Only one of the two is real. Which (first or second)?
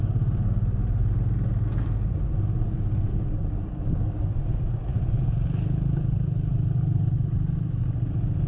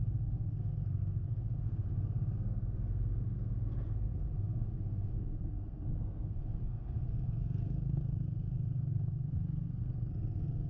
first